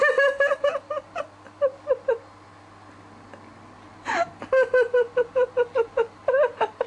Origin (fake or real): real